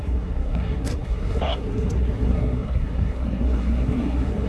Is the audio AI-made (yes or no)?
yes